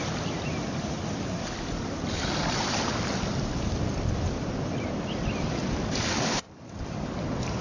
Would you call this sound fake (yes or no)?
yes